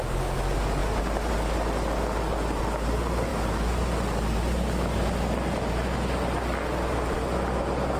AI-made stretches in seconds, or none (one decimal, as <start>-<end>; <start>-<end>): none